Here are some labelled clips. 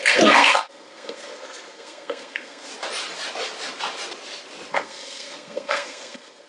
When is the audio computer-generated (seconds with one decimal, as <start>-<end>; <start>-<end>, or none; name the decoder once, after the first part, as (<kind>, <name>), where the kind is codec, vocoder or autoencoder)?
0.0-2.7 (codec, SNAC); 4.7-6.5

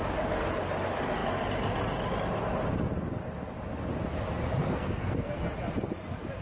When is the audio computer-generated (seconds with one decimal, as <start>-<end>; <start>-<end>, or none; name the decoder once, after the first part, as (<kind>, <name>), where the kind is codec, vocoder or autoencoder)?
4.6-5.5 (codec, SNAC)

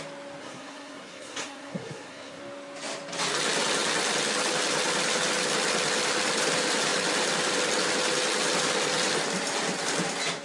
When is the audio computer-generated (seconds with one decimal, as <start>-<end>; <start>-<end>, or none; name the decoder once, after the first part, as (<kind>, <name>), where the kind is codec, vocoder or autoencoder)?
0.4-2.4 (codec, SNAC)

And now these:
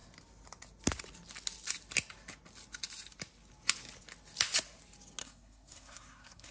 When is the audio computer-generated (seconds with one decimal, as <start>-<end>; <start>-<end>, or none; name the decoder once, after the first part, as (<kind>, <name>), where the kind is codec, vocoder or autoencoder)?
5.2-6.5 (codec, SNAC)

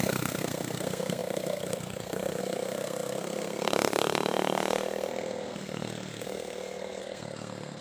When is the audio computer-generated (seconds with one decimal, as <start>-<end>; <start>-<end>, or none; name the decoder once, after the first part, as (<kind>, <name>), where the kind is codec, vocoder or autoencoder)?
0.0-7.8 (codec, SNAC)